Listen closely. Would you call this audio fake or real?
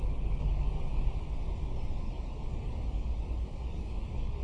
fake